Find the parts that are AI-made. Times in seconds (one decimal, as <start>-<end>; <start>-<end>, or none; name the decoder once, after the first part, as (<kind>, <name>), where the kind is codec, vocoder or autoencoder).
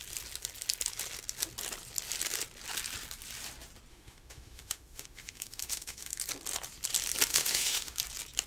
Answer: 3.9-6.2 (autoencoder, DAC-VAE); 7.3-8.0